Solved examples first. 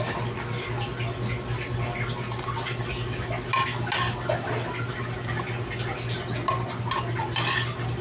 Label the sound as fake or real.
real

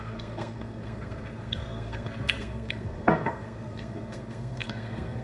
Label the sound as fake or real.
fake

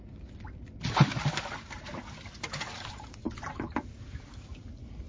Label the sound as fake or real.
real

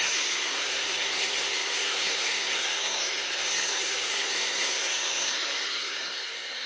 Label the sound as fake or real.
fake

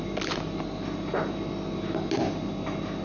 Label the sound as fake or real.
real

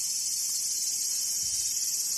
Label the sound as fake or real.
real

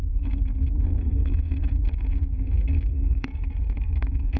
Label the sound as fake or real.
fake